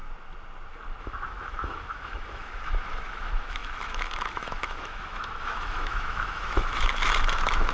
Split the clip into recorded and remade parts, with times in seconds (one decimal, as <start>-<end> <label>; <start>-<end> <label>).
0.0-1.0 recorded; 1.0-7.7 remade